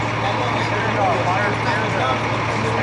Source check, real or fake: real